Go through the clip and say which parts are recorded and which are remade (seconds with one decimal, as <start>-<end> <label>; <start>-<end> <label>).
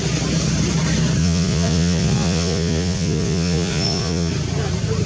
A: 0.0-1.2 recorded; 1.2-4.3 remade; 4.3-5.1 recorded